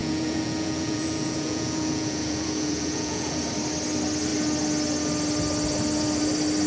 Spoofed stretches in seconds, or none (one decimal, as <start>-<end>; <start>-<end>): 0.0-3.5